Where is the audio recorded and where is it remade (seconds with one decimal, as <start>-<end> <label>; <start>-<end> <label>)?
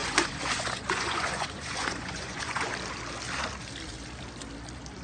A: 0.0-2.7 remade; 2.7-5.0 recorded